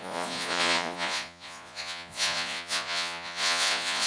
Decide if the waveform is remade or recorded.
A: remade